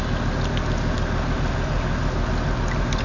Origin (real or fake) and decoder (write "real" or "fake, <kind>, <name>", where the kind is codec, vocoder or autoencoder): real